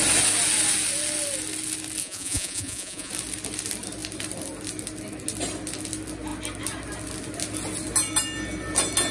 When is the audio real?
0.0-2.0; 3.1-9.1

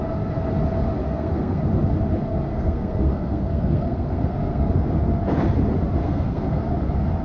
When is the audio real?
0.0-1.0; 1.6-2.5; 4.7-6.0; 6.6-7.2

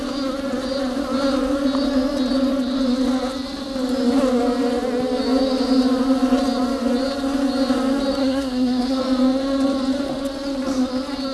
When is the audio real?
0.0-8.2; 9.0-11.3

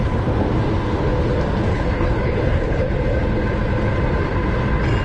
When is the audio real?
0.0-1.7; 2.9-5.0

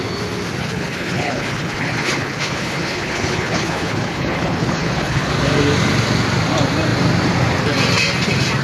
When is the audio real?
0.0-0.6; 5.3-8.6

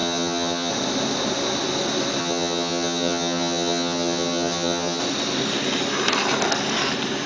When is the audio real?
0.7-2.2; 5.0-7.3

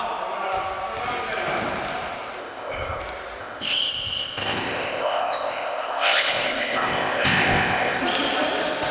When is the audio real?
0.0-2.4; 3.0-3.4; 8.0-8.9

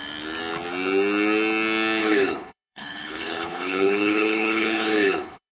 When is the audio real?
0.0-2.0